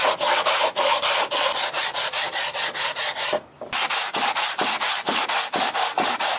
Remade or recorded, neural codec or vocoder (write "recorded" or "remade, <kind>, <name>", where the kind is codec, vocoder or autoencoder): recorded